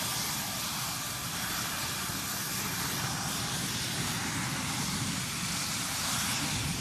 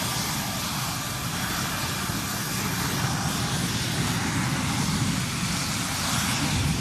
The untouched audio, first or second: second